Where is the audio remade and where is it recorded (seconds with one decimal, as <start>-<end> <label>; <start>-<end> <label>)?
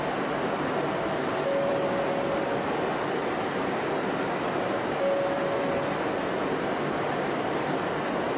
0.0-8.4 recorded